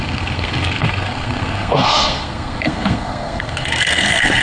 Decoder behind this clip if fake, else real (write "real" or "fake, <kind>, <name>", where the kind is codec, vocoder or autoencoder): fake, codec, SNAC